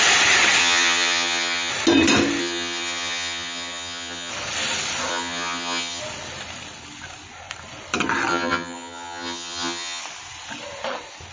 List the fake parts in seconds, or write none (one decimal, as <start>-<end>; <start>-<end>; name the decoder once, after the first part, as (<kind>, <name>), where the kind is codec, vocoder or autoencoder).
0.6-1.7 (vocoder, HiFi-GAN); 2.4-4.3; 5.1-6.0; 8.3-10.0